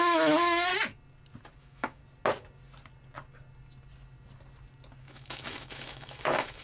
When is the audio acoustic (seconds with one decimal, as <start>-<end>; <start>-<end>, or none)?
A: 0.7-1.6; 2.0-5.0